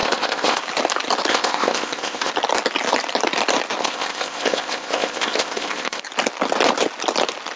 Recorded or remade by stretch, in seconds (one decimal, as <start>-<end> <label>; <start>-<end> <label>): 0.0-0.6 remade; 0.6-1.3 recorded; 1.3-2.3 remade; 2.3-3.8 recorded; 3.8-6.0 remade; 6.0-7.6 recorded